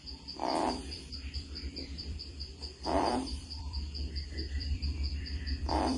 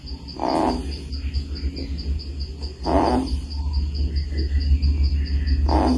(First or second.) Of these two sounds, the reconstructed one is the first